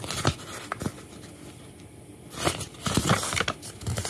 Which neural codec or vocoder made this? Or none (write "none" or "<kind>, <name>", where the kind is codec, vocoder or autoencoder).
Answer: none